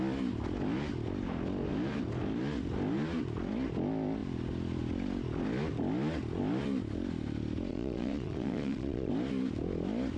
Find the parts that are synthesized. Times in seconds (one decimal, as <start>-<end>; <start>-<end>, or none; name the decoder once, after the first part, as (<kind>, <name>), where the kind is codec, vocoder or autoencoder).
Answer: 7.7-9.1 (vocoder, Vocos)